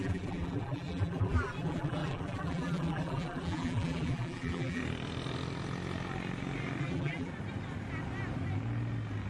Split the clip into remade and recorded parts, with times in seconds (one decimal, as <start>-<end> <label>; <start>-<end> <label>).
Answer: 0.0-4.8 remade; 4.8-6.8 recorded; 6.8-7.3 remade; 7.3-9.3 recorded